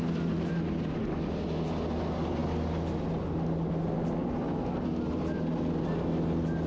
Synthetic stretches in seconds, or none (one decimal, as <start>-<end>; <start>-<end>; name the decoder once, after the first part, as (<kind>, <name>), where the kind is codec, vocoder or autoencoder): none